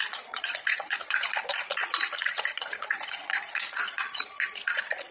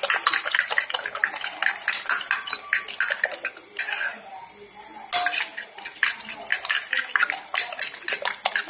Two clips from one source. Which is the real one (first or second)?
second